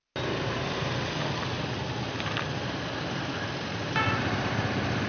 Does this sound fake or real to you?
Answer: real